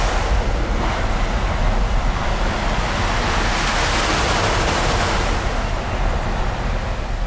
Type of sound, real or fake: real